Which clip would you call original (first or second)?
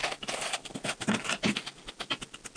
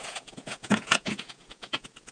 first